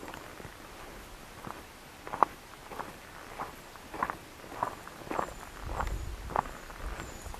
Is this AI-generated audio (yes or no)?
no